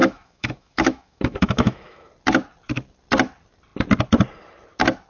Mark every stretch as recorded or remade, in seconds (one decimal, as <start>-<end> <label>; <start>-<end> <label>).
0.0-2.1 remade; 2.1-5.1 recorded